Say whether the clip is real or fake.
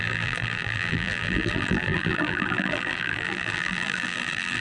fake